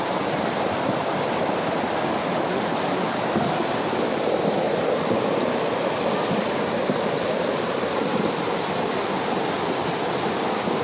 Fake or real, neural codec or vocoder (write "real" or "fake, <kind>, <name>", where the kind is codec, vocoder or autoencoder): real